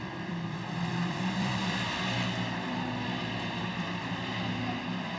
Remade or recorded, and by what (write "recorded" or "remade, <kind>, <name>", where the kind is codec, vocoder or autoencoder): remade, vocoder, BigVGAN v2